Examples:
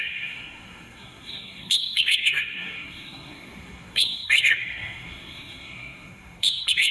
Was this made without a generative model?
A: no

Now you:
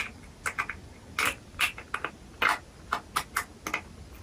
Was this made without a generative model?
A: yes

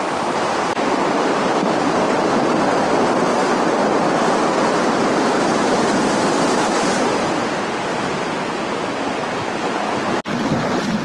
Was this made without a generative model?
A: yes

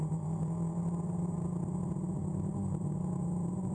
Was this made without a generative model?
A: no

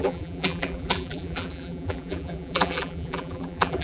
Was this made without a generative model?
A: no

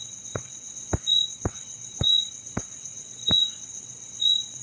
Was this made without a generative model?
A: no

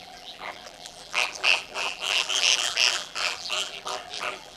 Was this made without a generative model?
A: no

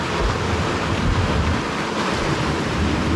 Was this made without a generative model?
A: yes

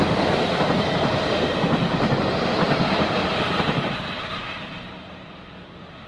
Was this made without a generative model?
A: yes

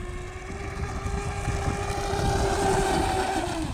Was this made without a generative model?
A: yes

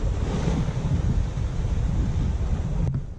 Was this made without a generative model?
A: yes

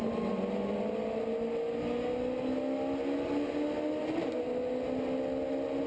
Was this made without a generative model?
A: yes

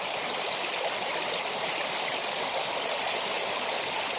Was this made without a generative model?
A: yes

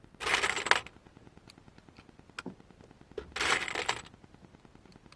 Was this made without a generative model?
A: yes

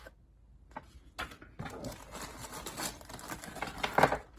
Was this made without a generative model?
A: yes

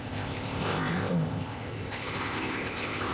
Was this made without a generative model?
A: no